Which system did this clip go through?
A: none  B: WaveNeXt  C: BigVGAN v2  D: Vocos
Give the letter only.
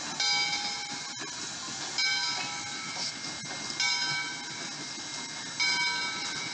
A